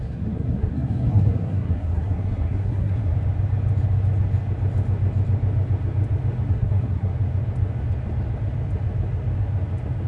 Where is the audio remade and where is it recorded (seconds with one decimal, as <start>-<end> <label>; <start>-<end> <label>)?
0.0-3.1 remade; 3.1-6.5 recorded; 6.5-7.1 remade; 7.1-10.1 recorded